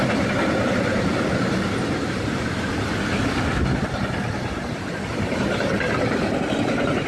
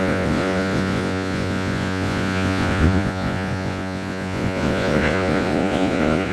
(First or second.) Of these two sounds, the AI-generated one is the second